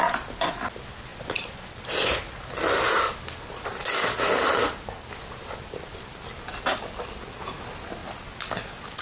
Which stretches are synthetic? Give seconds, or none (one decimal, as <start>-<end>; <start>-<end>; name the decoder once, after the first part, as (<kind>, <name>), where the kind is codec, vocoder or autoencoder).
none